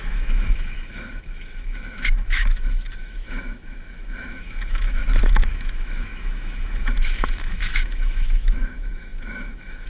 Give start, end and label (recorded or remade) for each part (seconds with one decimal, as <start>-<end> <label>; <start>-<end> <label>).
0.0-5.0 remade; 5.0-5.5 recorded; 5.5-9.9 remade